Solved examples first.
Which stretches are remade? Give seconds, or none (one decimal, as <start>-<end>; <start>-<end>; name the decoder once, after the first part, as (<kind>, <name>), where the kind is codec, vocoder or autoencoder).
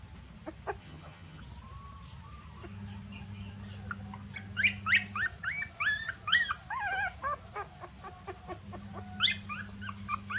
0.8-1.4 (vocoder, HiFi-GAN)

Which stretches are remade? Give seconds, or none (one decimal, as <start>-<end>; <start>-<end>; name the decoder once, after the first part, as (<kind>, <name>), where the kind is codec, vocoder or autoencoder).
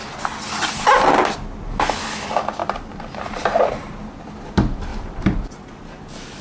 2.6-4.1 (vocoder, BigVGAN v2); 4.9-6.4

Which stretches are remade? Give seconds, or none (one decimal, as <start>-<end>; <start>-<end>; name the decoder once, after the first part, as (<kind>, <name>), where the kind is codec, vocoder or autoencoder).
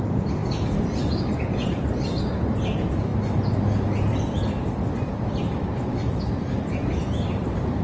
none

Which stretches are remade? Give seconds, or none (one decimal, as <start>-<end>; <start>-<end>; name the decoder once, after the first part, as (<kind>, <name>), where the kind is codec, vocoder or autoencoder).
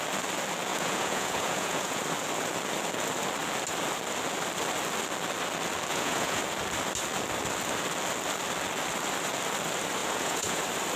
0.7-2.0 (vocoder, Vocos); 5.9-6.4; 10.0-10.6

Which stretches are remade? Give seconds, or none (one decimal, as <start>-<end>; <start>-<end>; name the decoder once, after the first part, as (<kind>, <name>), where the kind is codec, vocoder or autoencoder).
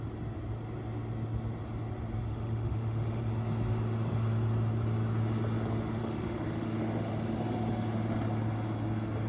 2.3-3.2 (autoencoder, DAC-VAE); 6.0-7.1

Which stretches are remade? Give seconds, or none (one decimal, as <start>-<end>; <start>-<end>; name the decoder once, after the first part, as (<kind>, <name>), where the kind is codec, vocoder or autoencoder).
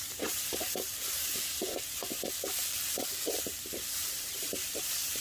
0.0-0.9 (vocoder, BigVGAN v2); 4.0-5.2